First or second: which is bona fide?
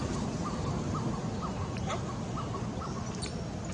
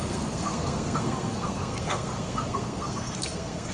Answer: first